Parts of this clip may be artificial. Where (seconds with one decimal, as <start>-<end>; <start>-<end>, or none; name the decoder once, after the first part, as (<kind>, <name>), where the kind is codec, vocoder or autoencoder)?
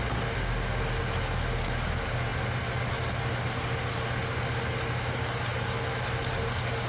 none